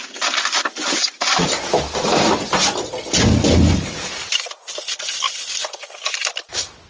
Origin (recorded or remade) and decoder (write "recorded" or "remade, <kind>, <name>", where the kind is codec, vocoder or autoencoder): remade, vocoder, BigVGAN v2